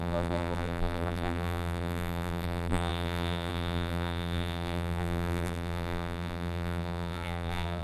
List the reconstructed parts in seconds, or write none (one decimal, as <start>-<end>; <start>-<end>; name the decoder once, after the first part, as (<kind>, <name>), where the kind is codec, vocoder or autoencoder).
0.0-7.8 (vocoder, BigVGAN v2)